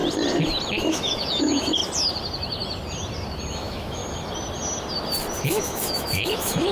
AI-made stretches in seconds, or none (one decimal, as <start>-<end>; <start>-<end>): 0.8-1.8; 3.5-4.0; 5.4-6.7